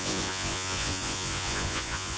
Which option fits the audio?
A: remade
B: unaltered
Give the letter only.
A